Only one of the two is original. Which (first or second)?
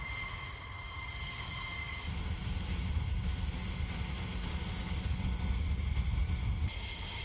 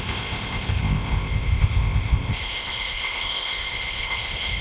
first